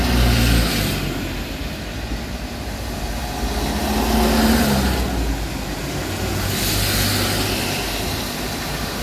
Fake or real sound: real